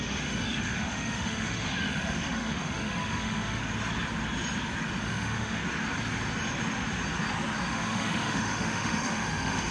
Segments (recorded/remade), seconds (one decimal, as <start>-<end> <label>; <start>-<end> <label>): 0.0-3.6 remade; 3.6-5.0 recorded; 5.0-5.6 remade; 5.6-7.7 recorded; 7.7-9.7 remade